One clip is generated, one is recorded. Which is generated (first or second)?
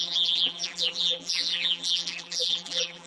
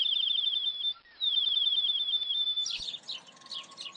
first